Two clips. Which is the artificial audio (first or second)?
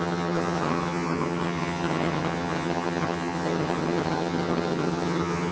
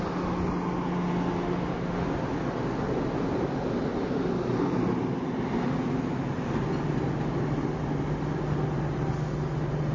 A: first